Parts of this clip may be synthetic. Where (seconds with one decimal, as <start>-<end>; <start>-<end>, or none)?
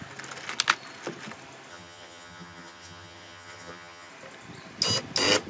1.7-4.1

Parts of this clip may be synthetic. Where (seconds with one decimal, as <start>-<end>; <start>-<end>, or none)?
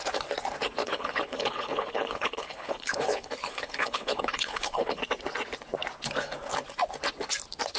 0.8-5.0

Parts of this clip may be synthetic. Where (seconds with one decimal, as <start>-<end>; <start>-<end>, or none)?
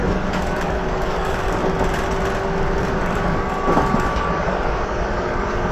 0.0-1.6; 3.0-5.7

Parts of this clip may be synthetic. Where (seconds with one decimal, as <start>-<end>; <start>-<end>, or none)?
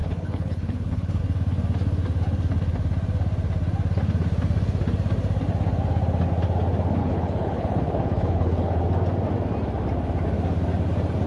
0.0-1.2; 7.0-8.8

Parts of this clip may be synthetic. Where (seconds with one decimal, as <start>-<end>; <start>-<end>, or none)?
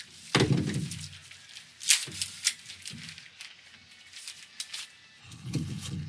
5.2-6.1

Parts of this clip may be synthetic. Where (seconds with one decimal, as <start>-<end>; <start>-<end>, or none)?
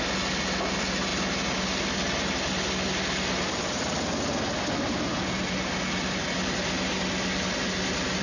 none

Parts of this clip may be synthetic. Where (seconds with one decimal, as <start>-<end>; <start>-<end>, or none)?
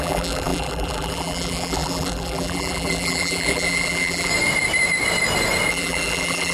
0.0-4.3; 5.7-6.5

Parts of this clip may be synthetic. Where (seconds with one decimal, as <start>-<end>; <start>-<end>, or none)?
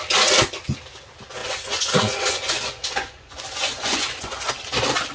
1.4-4.5